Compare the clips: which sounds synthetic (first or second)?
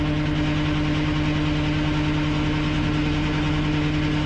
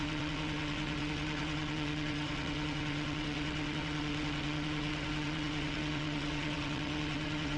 second